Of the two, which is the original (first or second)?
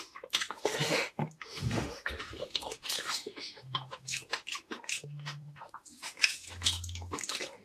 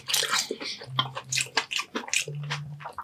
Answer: second